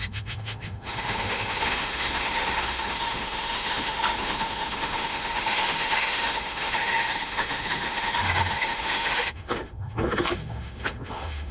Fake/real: fake